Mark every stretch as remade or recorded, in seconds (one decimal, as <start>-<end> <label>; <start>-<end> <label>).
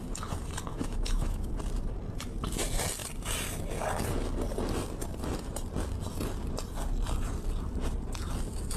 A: 0.0-0.7 recorded; 0.7-1.5 remade; 1.5-8.8 recorded